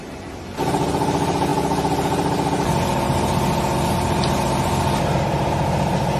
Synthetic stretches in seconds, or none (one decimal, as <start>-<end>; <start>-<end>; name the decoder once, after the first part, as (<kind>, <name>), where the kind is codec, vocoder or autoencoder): none